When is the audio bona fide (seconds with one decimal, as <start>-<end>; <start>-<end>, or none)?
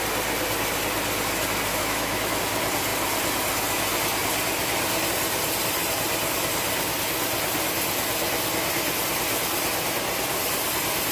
0.0-1.7; 2.4-11.1